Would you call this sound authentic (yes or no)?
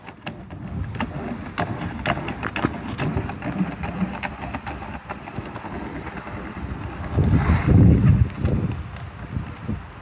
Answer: yes